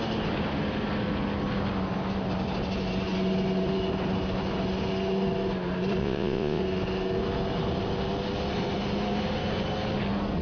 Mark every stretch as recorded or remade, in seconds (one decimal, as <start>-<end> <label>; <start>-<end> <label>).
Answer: 0.0-6.0 recorded; 6.0-6.6 remade; 6.6-10.4 recorded